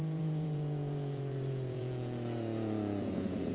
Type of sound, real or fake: fake